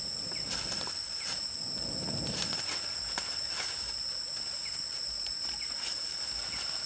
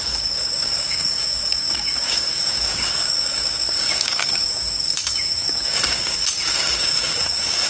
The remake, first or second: second